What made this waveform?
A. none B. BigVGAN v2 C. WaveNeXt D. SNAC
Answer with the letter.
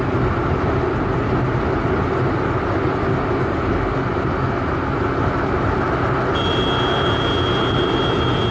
A